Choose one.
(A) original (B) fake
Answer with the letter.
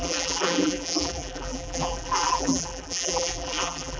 B